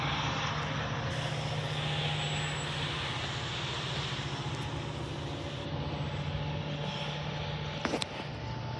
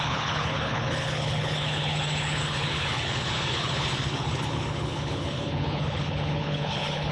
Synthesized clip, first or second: second